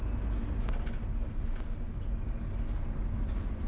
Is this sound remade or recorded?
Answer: recorded